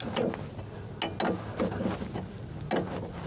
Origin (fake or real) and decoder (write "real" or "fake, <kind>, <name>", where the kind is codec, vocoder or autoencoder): real